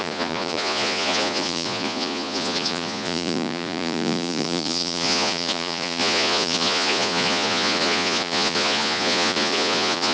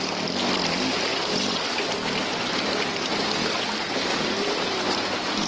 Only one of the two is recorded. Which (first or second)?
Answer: second